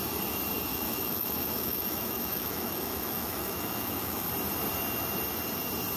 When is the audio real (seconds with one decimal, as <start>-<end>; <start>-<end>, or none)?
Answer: 0.0-0.7; 4.3-6.0